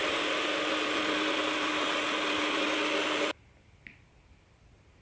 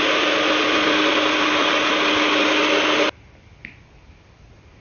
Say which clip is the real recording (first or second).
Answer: second